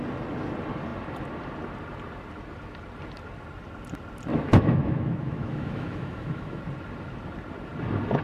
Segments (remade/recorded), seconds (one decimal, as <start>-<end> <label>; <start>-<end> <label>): 0.0-4.3 recorded; 4.3-6.6 remade; 6.6-8.2 recorded